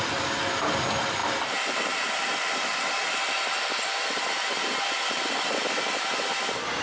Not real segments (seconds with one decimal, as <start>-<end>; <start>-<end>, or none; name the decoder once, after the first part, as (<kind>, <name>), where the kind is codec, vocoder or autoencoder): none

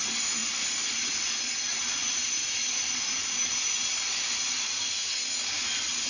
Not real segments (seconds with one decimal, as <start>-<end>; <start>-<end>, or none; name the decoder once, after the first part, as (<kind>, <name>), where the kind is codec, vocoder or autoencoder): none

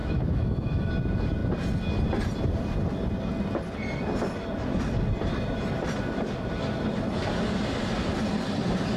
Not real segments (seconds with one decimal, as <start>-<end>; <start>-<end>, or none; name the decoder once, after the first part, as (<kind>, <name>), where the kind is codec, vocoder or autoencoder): 0.0-0.9 (autoencoder, DAC-VAE)

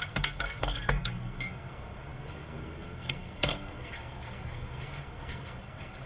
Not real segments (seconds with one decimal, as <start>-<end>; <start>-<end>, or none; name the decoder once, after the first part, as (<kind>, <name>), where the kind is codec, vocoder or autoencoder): 0.0-6.1 (codec, SNAC)

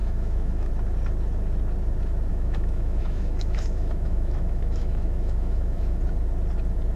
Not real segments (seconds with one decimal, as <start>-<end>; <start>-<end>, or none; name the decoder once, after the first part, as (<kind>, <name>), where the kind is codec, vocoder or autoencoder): 0.0-0.7 (autoencoder, DAC-VAE); 2.3-6.0

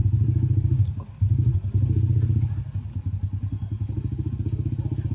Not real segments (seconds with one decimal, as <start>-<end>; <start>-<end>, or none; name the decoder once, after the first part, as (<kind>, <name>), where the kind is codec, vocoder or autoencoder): none